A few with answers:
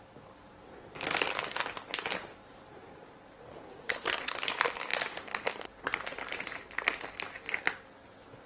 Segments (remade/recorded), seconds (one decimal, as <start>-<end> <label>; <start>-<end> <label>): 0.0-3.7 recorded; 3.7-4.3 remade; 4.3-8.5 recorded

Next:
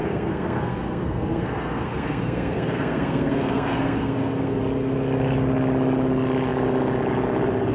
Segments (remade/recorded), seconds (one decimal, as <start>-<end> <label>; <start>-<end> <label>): 0.0-4.6 remade; 4.6-7.7 recorded

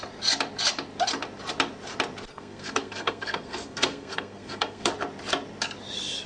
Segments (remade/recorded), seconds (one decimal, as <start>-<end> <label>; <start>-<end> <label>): 0.0-2.3 recorded; 2.3-4.9 remade; 4.9-6.3 recorded